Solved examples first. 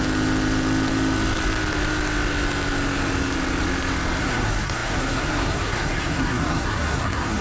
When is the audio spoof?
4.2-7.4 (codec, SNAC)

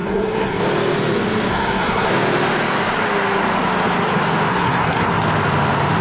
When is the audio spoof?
0.0-0.6 (codec, SNAC); 1.5-2.1; 4.5-5.1

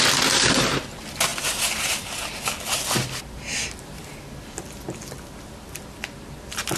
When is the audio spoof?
none

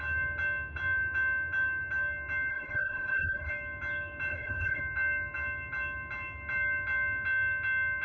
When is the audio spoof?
2.5-3.5 (codec, HILCodec); 4.3-4.8

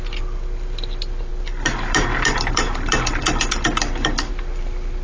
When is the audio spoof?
none

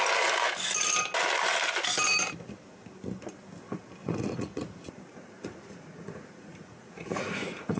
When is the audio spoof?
4.0-7.8 (vocoder, Vocos)

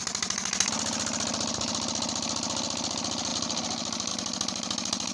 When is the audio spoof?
none

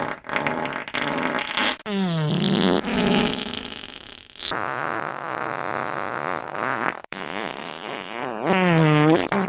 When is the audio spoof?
2.9-6.4 (autoencoder, DAC-VAE); 7.0-7.5